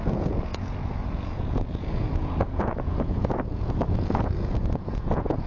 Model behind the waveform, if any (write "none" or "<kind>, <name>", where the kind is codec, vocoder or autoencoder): vocoder, Vocos